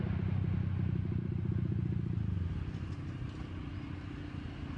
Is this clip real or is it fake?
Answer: real